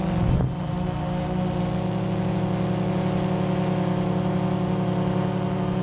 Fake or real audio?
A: real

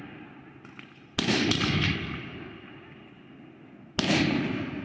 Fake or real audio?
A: real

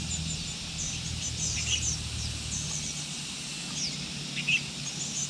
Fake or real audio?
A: real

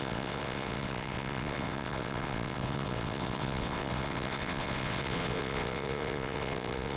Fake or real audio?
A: fake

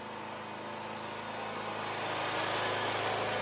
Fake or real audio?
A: real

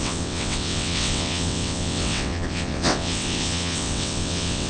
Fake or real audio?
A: fake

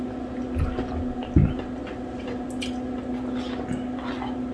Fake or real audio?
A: real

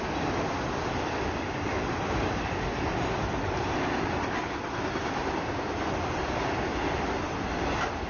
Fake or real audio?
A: real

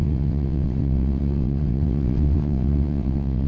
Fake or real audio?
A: fake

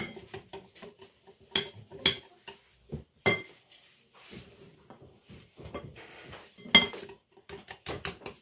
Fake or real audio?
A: real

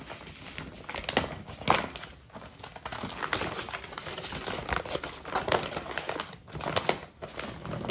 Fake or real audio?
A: real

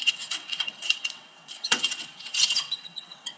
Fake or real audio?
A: fake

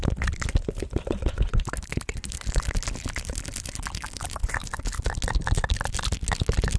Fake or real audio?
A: real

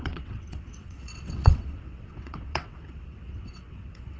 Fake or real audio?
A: fake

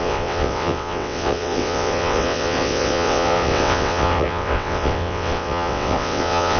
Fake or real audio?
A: fake